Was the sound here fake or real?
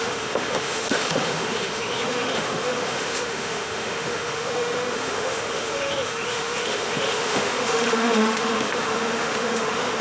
fake